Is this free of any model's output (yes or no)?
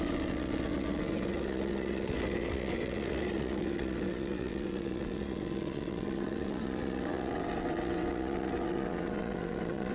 no